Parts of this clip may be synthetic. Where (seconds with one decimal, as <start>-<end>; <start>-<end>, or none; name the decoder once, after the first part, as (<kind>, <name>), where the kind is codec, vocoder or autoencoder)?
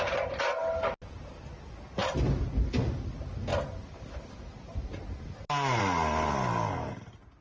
none